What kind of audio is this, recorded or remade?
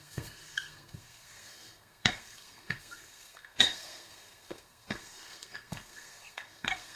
remade